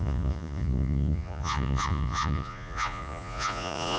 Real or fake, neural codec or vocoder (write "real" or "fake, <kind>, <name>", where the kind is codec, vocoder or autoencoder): fake, vocoder, Vocos